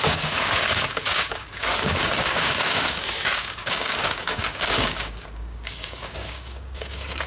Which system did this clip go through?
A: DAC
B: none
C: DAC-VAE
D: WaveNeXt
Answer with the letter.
A